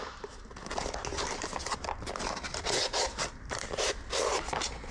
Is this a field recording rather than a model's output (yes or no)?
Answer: yes